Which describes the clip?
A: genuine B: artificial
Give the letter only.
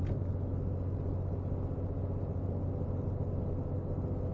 A